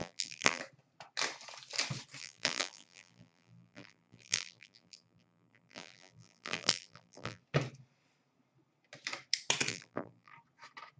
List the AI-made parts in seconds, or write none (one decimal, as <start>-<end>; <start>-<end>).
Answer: 0.0-0.6; 2.2-7.4; 9.7-10.3